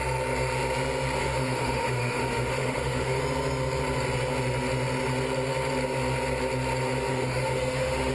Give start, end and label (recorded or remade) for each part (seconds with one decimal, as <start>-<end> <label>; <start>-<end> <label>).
0.0-1.2 recorded; 1.2-3.2 remade; 3.2-7.1 recorded; 7.1-8.1 remade